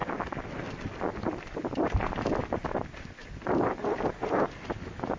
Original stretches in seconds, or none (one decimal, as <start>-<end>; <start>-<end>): 0.0-3.2